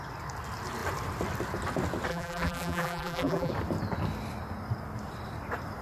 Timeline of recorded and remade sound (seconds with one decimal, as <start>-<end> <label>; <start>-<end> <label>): 0.0-2.1 recorded; 2.1-3.5 remade; 3.5-5.8 recorded